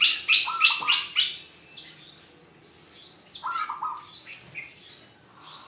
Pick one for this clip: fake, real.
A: real